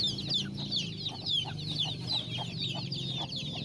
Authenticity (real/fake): real